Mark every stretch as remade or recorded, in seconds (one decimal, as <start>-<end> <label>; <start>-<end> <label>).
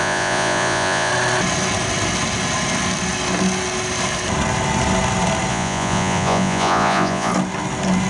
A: 0.0-1.1 remade; 1.1-5.5 recorded; 5.5-7.3 remade; 7.3-8.1 recorded